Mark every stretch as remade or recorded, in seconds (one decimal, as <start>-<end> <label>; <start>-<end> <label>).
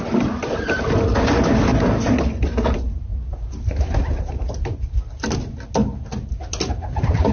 0.0-7.3 recorded